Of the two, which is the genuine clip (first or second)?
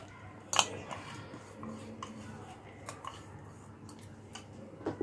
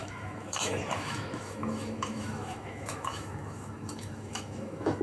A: first